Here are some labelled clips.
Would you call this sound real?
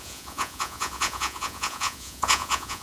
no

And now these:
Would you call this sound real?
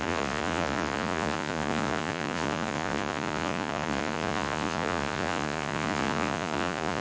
no